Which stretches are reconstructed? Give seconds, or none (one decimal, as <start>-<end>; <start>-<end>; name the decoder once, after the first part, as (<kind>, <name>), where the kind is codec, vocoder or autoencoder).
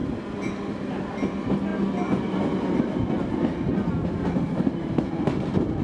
none